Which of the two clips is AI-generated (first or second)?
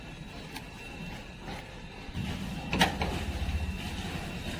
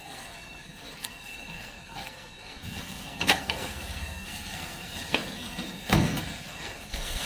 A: second